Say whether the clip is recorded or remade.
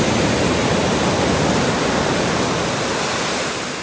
recorded